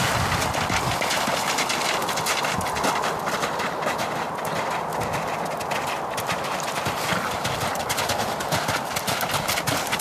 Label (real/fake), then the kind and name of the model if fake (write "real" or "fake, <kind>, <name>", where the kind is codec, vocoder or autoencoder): real